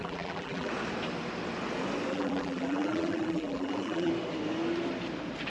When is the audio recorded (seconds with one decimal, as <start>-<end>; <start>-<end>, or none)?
0.7-2.1; 4.1-5.5